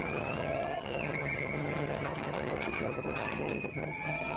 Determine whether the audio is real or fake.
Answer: fake